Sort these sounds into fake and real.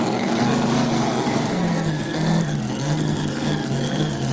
fake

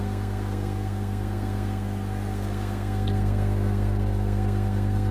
fake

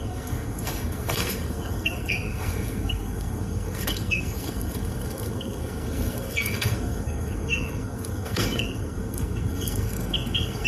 fake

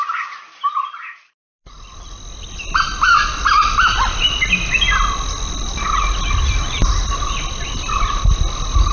real